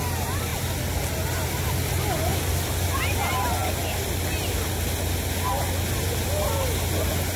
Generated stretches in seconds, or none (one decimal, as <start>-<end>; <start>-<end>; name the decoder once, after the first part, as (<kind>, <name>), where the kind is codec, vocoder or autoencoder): none